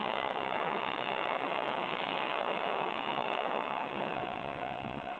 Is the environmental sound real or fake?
fake